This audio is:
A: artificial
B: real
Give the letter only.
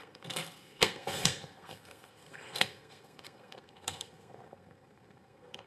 A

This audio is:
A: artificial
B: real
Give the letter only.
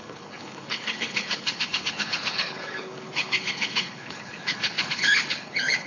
A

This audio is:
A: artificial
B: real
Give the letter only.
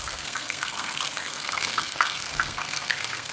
A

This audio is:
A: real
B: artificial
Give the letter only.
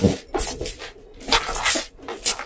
A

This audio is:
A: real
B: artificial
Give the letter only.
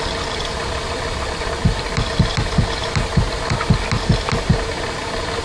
A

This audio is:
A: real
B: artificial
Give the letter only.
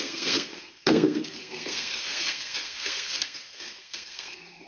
B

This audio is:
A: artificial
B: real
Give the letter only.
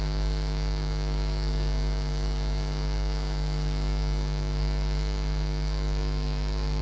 A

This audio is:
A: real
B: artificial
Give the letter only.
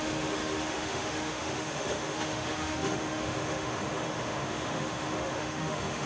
B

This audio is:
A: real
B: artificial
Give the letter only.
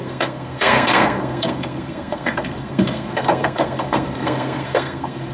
B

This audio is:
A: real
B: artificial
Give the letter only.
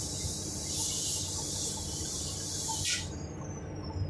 A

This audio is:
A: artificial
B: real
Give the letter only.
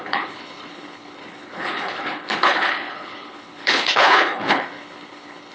A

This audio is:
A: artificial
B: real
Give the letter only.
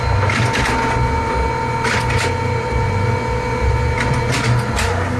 B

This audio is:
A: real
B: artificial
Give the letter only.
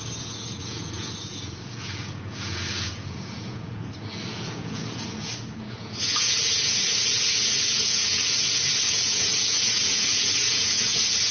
B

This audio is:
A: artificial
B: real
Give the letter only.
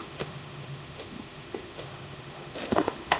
A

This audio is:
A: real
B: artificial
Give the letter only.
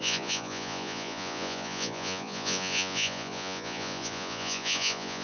B